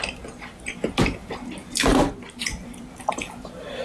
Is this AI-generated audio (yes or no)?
yes